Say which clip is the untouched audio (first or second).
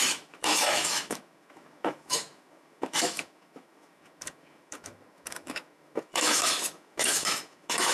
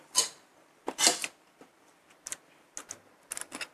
second